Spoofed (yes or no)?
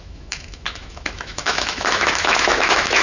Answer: yes